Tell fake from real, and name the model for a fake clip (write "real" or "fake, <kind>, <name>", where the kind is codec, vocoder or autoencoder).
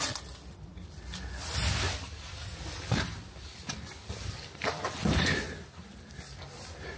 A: real